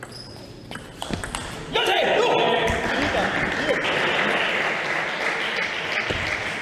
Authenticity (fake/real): real